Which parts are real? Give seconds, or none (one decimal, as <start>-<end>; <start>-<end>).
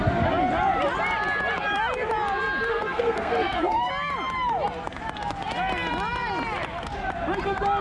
0.0-2.7; 3.9-7.8